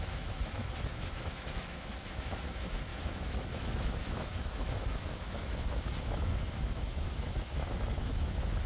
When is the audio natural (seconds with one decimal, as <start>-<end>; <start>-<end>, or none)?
none